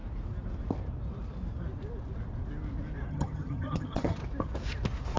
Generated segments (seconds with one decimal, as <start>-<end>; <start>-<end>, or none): 3.1-4.2